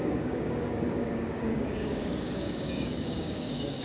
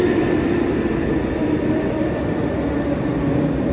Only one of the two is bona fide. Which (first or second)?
second